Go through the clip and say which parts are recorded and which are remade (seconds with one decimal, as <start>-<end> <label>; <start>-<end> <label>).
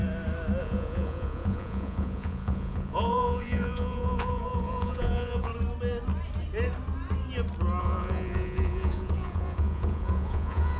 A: 0.0-0.6 recorded; 0.6-5.5 remade; 5.5-7.8 recorded; 7.8-10.8 remade